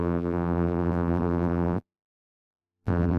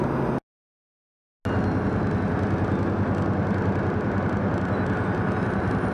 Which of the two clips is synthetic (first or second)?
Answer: first